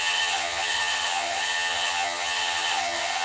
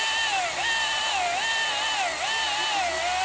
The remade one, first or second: first